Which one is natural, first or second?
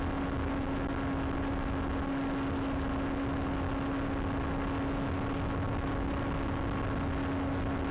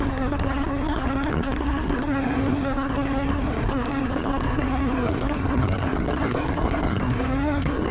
first